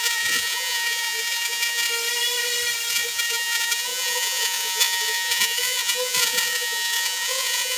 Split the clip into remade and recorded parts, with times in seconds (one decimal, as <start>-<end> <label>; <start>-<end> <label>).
0.0-1.9 remade; 1.9-2.9 recorded; 2.9-7.8 remade